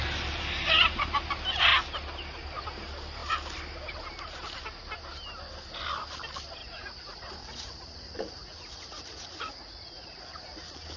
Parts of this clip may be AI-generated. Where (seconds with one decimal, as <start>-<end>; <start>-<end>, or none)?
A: 6.6-10.2